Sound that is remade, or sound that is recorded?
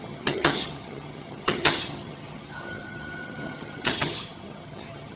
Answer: remade